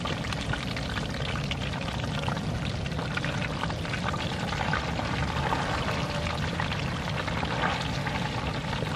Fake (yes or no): no